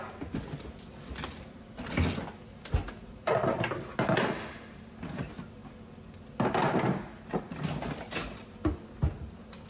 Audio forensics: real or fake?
real